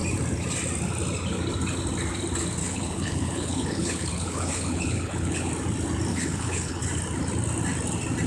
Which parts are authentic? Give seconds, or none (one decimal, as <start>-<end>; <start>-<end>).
0.0-2.6; 5.5-6.1; 6.8-8.3